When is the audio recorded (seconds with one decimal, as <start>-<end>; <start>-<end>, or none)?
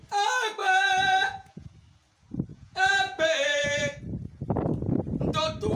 0.0-0.6; 1.7-2.5; 4.0-5.8